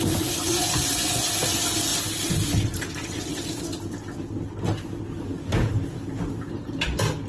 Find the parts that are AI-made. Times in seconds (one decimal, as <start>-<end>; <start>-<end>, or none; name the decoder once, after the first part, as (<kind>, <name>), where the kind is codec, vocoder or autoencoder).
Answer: 0.4-1.3 (vocoder, Vocos)